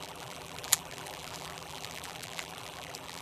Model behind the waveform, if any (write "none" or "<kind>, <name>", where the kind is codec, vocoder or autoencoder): vocoder, BigVGAN v2